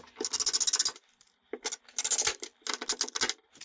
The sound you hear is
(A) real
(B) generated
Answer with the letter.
A